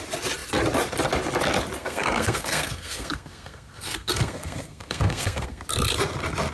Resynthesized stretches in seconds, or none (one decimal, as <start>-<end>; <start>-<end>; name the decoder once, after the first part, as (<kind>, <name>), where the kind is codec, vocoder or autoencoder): 1.8-5.6 (codec, SNAC)